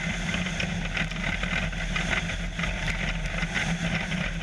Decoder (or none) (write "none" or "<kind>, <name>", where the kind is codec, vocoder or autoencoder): none